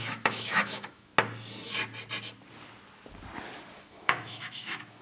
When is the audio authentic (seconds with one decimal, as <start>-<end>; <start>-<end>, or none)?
1.1-3.8